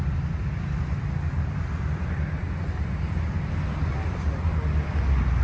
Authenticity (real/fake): real